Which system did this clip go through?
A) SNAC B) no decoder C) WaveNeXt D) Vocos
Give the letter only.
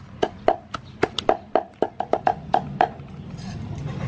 B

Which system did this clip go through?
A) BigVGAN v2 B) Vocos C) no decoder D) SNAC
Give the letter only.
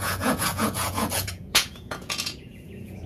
B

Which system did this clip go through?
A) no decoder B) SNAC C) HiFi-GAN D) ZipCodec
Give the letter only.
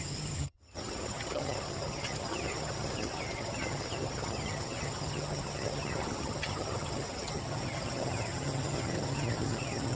C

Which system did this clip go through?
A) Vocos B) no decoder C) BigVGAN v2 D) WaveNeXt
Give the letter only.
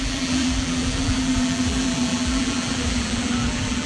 C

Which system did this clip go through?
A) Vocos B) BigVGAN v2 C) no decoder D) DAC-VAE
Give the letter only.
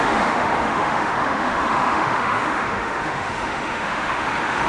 D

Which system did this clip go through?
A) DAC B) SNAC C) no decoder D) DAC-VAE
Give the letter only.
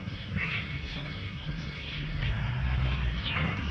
B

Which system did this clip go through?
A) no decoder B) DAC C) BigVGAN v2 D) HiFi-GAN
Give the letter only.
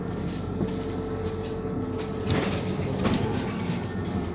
A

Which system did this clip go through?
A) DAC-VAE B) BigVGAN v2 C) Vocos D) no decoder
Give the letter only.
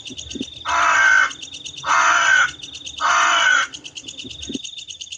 D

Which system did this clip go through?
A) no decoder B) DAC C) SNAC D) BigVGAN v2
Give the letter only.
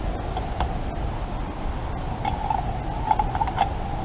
A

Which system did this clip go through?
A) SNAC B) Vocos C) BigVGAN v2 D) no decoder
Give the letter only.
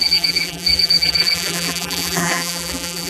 C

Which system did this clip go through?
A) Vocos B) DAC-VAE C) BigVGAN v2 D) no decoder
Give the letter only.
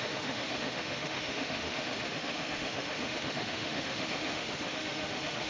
B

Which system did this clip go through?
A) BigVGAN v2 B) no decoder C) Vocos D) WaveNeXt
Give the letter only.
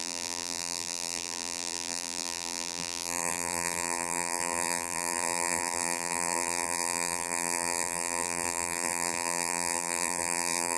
A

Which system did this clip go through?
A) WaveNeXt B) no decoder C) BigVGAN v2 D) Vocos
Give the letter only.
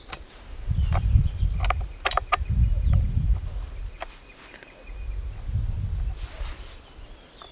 B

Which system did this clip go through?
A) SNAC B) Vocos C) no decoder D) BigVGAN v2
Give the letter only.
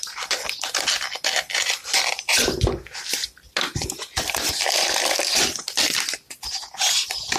C